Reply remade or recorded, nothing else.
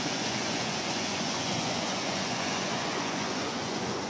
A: remade